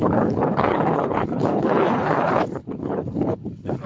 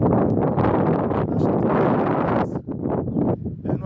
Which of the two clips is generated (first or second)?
first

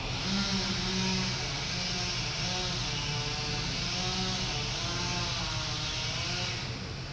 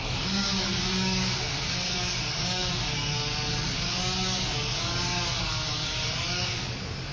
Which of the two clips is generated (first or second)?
second